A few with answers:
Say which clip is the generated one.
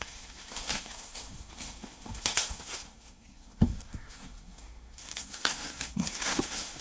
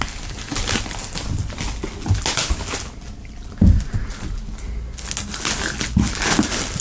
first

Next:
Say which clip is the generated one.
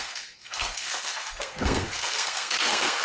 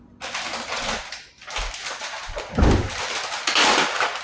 first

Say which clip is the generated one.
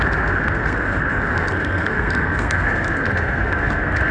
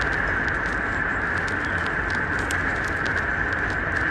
first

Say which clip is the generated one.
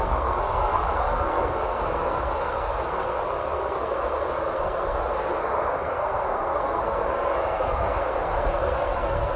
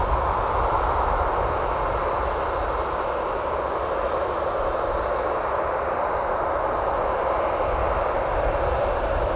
first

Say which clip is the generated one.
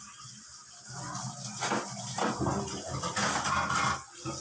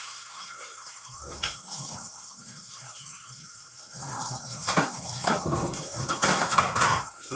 second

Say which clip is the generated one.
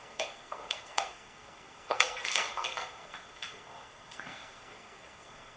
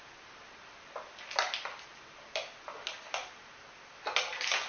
first